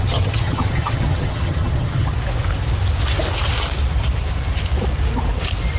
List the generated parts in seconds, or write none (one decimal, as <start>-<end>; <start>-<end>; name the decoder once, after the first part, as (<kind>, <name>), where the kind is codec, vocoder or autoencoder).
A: 0.0-2.1 (vocoder, HiFi-GAN)